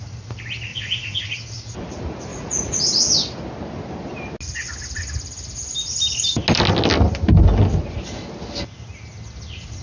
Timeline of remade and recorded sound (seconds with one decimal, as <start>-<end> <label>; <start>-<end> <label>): 0.0-0.7 recorded; 0.7-1.3 remade; 1.3-2.3 recorded; 2.3-2.8 remade; 2.8-9.8 recorded